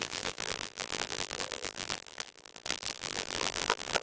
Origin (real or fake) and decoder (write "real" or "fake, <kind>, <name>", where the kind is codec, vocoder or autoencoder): fake, vocoder, BigVGAN v2